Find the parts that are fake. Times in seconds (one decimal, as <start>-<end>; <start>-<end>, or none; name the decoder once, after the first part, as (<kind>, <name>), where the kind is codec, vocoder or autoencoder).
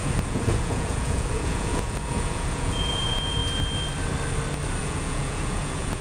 0.0-3.4 (vocoder, Vocos); 4.8-6.0